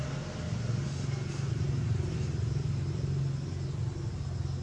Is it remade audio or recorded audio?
recorded